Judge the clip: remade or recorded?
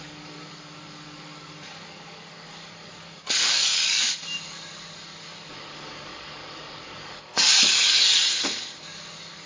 remade